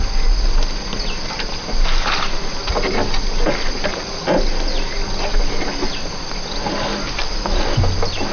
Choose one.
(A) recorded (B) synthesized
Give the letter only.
A